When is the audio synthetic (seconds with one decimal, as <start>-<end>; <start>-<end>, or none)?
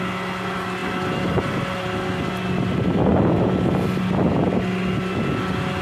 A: none